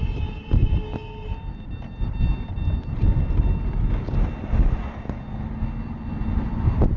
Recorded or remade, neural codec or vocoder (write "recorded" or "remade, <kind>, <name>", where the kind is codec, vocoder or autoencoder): recorded